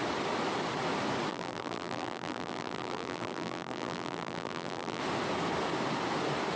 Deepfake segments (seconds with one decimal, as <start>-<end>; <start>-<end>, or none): 1.3-5.0